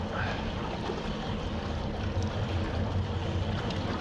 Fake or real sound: real